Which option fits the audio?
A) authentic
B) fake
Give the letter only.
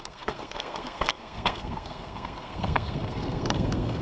B